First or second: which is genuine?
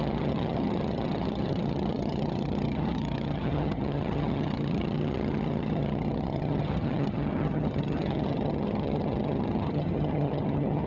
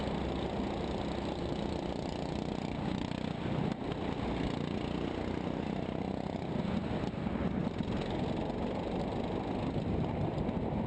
second